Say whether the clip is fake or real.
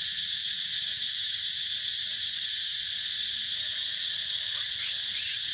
fake